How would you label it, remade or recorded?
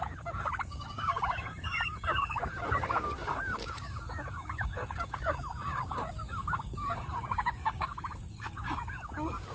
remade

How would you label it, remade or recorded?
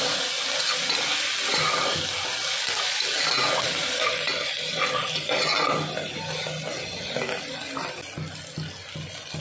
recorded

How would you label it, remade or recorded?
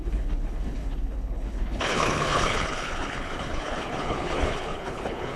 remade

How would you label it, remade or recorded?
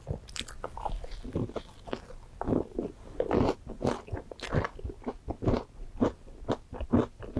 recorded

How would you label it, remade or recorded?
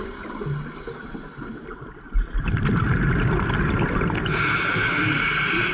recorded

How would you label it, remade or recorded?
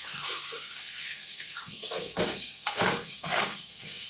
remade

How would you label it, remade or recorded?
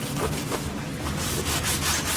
recorded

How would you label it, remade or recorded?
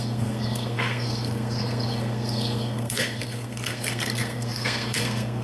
remade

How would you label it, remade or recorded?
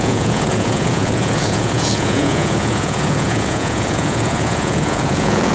remade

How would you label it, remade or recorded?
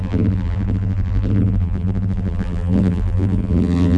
remade